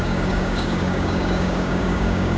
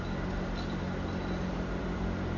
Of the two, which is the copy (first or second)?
first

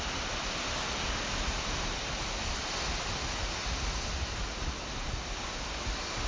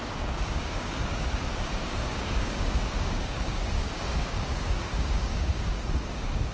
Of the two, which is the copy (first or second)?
second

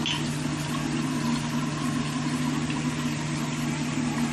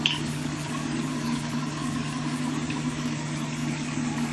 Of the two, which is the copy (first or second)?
second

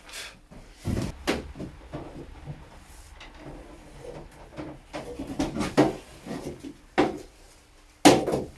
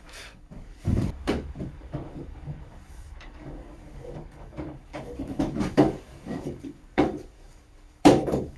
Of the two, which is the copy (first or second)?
second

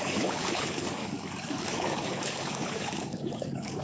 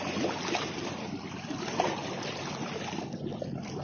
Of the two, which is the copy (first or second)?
first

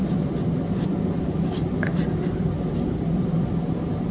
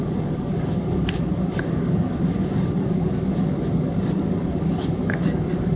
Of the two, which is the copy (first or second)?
second